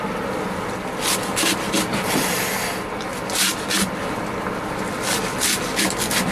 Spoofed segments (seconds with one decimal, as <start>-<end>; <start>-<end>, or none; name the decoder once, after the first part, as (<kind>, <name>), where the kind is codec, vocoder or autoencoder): 1.9-2.5 (vocoder, BigVGAN v2)